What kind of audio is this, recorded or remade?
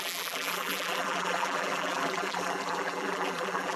remade